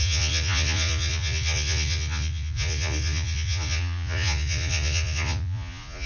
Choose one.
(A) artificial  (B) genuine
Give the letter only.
A